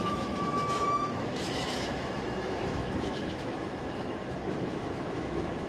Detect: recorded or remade remade